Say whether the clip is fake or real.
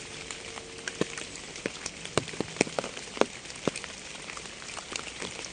real